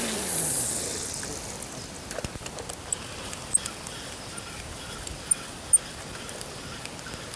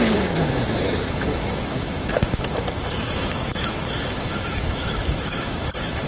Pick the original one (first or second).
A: first